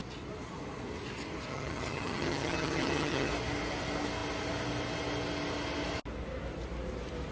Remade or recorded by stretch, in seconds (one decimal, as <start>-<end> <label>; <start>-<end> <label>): 0.0-1.5 recorded; 1.5-3.3 remade; 3.3-7.3 recorded

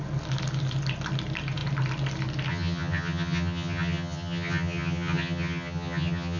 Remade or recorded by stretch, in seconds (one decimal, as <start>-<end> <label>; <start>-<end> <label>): 0.0-2.5 recorded; 2.5-6.4 remade

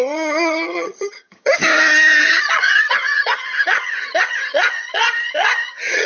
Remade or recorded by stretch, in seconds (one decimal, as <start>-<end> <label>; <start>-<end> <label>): 0.0-1.5 remade; 1.5-2.2 recorded; 2.2-6.1 remade

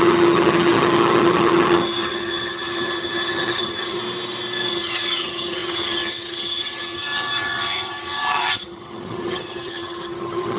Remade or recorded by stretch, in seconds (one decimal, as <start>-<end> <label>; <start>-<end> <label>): 0.0-4.0 remade; 4.0-4.7 recorded; 4.7-10.6 remade